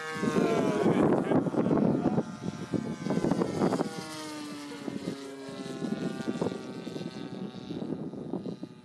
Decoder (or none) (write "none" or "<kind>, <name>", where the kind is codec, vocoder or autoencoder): none